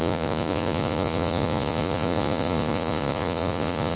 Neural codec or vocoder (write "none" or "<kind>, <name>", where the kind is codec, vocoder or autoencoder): vocoder, Vocos